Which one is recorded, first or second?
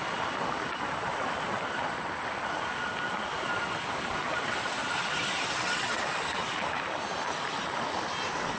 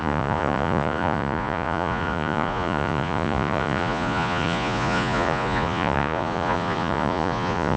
first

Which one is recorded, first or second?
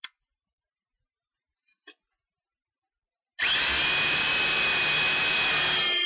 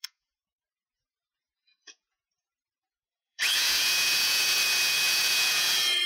first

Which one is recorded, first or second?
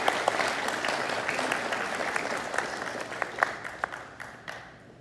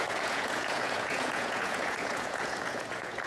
first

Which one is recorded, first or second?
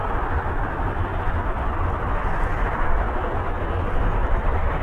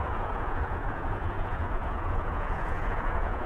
first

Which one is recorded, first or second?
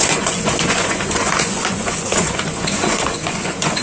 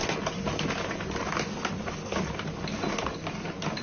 second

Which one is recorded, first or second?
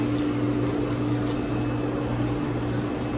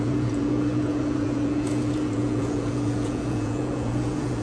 first